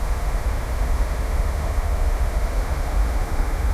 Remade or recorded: remade